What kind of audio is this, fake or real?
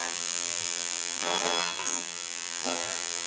fake